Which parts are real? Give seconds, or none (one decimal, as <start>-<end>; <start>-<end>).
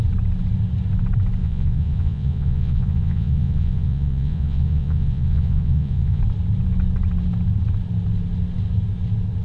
0.0-1.4; 6.2-9.4